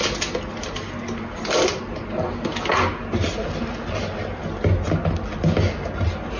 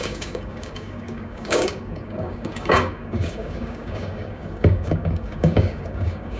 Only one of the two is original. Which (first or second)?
first